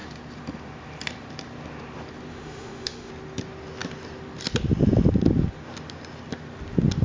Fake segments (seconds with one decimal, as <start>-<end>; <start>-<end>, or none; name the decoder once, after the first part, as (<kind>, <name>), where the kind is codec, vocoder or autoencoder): 2.3-3.1 (autoencoder, DAC-VAE)